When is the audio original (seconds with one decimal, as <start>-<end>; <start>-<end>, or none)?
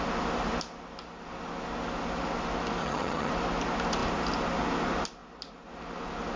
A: 0.0-2.8; 3.3-6.4